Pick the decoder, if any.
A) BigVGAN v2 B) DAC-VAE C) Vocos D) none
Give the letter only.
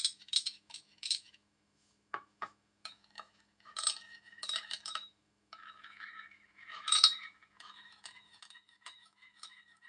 B